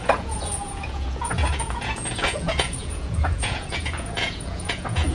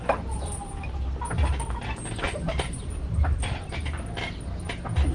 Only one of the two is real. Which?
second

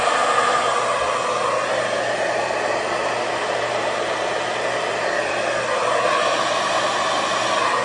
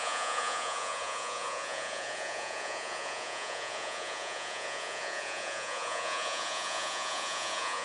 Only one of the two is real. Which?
first